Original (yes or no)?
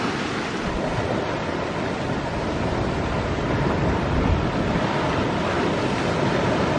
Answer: yes